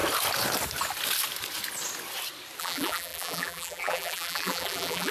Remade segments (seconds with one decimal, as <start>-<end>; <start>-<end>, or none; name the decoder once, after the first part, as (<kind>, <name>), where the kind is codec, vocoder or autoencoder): 2.6-5.1 (vocoder, BigVGAN v2)